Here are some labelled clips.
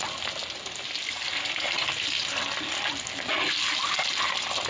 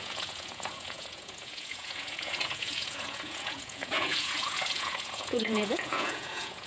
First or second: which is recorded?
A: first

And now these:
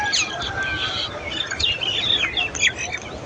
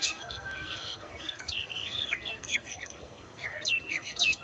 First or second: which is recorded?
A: first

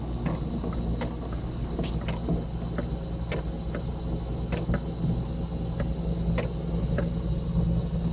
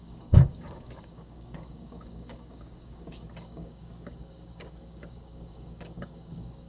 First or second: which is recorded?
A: first